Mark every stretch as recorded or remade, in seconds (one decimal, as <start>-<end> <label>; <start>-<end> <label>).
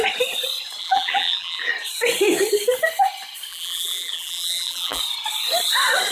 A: 0.0-0.8 recorded; 0.8-1.7 remade; 1.7-3.5 recorded; 3.5-5.0 remade; 5.0-6.1 recorded